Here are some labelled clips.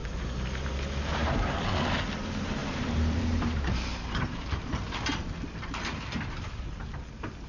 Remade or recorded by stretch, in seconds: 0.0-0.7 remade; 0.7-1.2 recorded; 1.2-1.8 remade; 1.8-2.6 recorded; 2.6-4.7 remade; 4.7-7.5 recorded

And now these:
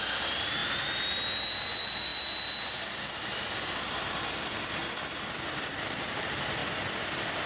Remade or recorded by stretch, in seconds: 0.0-0.6 remade; 0.6-1.6 recorded; 1.6-2.1 remade; 2.1-3.1 recorded; 3.1-7.5 remade

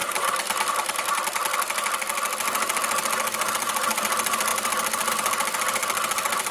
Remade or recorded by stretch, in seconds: 0.0-1.4 remade; 1.4-3.5 recorded; 3.5-6.5 remade

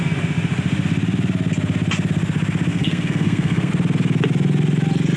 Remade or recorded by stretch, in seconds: 0.0-2.7 recorded; 2.7-3.7 remade; 3.7-5.2 recorded